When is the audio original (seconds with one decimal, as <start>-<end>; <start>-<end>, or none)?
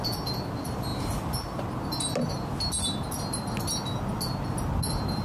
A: 0.0-5.2